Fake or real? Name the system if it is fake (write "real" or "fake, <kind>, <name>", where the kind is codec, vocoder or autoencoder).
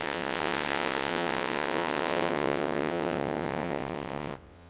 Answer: fake, vocoder, WaveNeXt